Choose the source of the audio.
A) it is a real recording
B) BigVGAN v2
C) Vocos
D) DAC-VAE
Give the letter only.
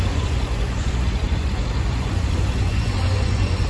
C